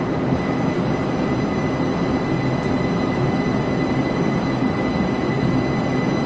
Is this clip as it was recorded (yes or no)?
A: yes